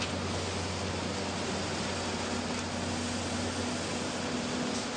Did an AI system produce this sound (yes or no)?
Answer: no